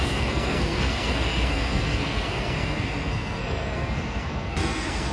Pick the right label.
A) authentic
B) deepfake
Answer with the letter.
B